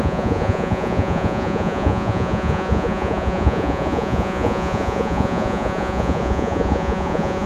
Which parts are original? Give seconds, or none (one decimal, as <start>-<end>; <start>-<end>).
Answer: none